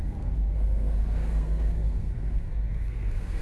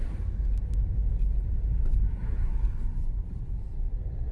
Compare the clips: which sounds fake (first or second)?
first